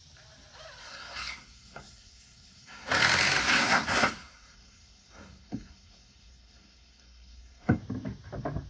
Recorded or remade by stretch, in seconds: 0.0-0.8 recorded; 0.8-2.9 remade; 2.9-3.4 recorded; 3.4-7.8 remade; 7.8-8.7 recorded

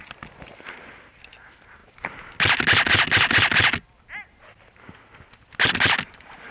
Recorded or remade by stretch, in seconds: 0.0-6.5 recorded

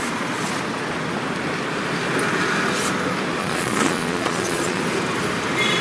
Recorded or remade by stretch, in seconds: 0.0-3.4 recorded; 3.4-4.8 remade; 4.8-5.8 recorded